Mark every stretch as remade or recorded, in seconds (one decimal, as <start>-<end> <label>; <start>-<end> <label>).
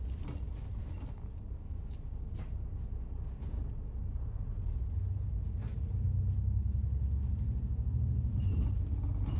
0.0-9.4 recorded